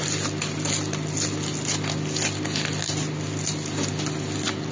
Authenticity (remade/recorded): recorded